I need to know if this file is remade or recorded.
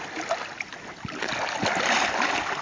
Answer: recorded